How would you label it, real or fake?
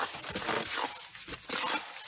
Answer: real